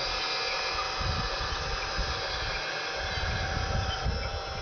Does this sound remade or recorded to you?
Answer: recorded